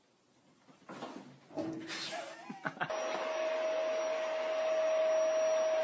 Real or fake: real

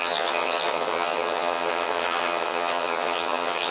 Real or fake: fake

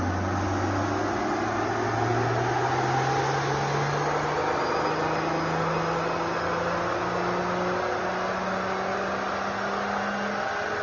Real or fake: real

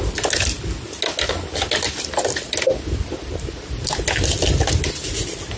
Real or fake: real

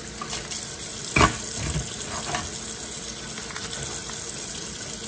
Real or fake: real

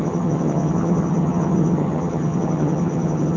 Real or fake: fake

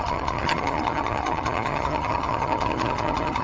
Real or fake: fake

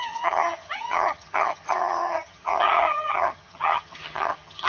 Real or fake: fake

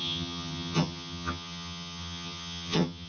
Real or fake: fake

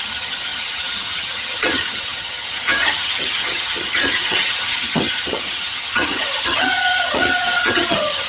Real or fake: fake